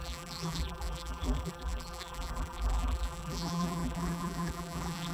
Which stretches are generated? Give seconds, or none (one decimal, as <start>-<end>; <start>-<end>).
0.0-5.1